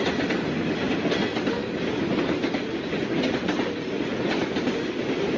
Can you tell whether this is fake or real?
real